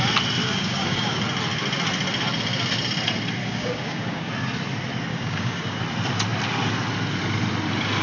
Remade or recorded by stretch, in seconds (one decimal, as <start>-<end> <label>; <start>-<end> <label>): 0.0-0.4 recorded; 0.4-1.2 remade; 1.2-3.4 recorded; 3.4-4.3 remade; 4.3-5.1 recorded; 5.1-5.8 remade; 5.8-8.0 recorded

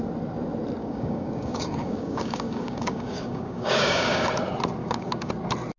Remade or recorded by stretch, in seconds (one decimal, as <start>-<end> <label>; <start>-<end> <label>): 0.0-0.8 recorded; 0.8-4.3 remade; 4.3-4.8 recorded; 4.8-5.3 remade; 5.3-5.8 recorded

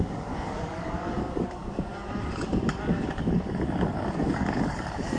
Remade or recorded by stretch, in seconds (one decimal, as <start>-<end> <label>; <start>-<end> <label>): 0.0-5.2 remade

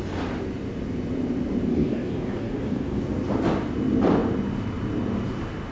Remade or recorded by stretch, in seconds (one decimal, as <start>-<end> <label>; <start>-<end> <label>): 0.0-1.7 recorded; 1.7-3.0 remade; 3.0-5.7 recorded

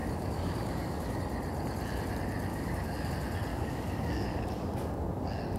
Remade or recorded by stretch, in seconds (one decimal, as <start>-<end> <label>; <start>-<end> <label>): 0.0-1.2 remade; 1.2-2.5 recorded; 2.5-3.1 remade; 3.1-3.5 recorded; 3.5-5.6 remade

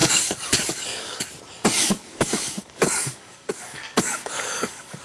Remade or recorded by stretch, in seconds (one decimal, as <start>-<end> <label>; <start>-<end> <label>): 0.0-1.3 remade; 1.3-1.8 recorded; 1.8-5.0 remade

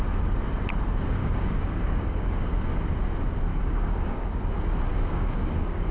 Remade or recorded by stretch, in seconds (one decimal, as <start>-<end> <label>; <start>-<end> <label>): 0.0-1.2 recorded; 1.2-2.5 remade; 2.5-3.5 recorded; 3.5-4.4 remade; 4.4-4.9 recorded; 4.9-5.9 remade

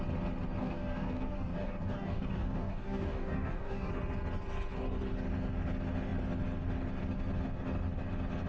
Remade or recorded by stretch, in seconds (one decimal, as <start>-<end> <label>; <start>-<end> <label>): 0.0-0.6 recorded; 0.6-3.9 remade; 3.9-8.5 recorded